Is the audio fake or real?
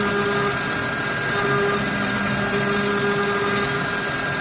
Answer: real